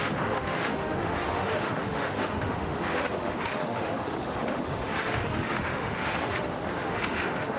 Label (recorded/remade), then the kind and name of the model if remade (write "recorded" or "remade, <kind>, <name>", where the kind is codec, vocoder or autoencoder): remade, autoencoder, DAC-VAE